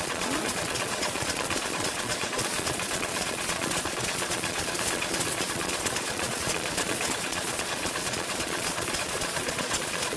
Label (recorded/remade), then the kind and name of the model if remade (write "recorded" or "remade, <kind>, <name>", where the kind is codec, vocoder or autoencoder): remade, vocoder, Vocos